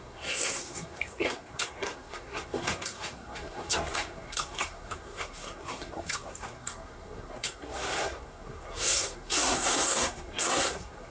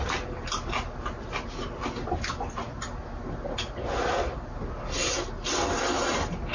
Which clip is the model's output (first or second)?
first